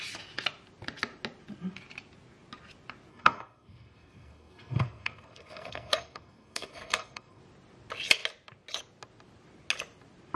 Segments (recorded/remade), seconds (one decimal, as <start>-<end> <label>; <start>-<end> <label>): 0.0-3.1 recorded; 3.1-7.4 remade; 7.4-10.4 recorded

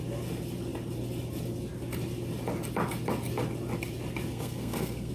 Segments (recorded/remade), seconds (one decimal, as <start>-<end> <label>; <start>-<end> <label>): 0.0-4.3 recorded; 4.3-5.1 remade